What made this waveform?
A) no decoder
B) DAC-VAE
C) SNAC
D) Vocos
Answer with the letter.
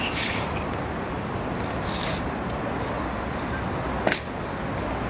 A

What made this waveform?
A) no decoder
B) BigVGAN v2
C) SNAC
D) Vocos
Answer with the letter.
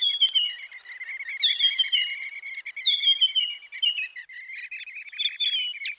A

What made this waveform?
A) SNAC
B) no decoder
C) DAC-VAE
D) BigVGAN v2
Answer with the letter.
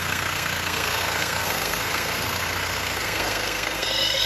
A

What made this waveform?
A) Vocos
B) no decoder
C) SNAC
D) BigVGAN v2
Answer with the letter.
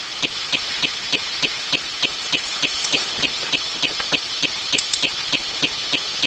B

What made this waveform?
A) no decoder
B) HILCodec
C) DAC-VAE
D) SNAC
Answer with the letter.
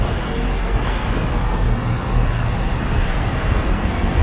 D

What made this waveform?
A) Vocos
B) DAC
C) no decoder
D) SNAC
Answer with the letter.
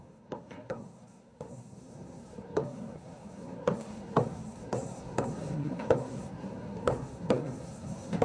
D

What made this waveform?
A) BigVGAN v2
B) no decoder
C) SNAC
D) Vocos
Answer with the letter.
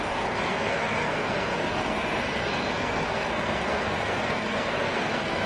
C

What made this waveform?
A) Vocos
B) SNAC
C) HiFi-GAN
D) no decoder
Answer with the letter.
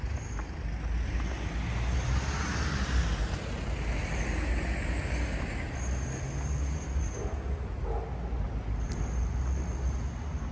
D